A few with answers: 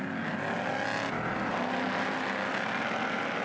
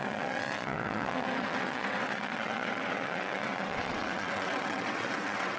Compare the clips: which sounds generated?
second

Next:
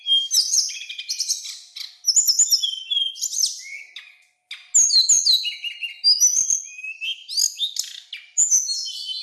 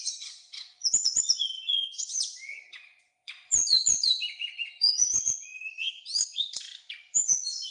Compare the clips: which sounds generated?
second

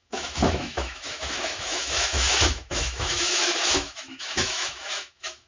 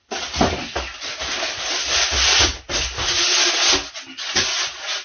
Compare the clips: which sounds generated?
first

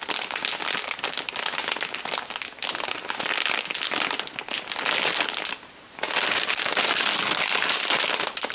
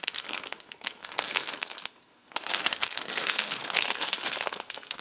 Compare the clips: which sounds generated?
second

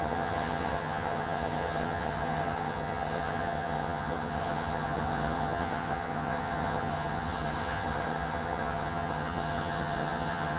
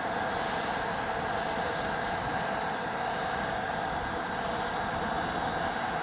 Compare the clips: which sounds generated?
first